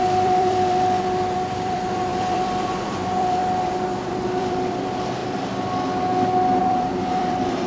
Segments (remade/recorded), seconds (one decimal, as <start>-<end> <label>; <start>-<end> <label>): 0.0-3.4 remade; 3.4-4.4 recorded; 4.4-5.2 remade; 5.2-6.6 recorded; 6.6-7.7 remade